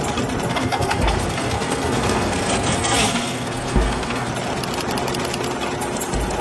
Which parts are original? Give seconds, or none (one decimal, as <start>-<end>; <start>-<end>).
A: 0.0-0.5; 4.3-6.4